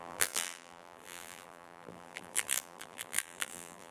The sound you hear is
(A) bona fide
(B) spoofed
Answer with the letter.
B